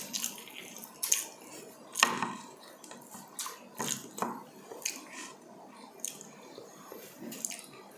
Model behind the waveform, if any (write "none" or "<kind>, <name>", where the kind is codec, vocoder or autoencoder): none